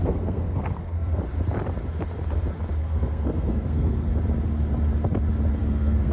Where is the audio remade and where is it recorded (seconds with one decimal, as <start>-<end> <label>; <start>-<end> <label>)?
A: 0.0-1.2 remade; 1.2-2.8 recorded; 2.8-4.1 remade; 4.1-5.6 recorded; 5.6-6.1 remade